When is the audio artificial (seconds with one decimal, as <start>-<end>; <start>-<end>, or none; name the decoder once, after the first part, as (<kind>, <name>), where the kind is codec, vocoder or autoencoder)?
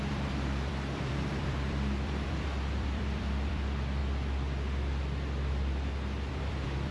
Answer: 0.0-4.0 (vocoder, BigVGAN v2); 6.3-6.9